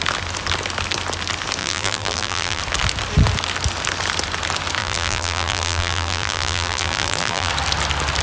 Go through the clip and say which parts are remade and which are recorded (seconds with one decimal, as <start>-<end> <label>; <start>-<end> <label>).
0.0-1.6 recorded; 1.6-2.6 remade; 2.6-4.8 recorded; 4.8-7.5 remade; 7.5-8.2 recorded